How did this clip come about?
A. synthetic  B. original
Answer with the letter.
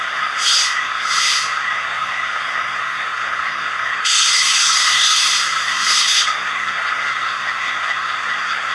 A